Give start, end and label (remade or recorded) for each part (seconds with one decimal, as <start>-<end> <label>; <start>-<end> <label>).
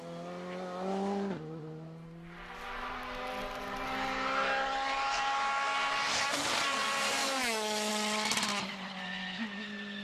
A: 0.0-7.2 recorded; 7.2-7.9 remade; 7.9-10.0 recorded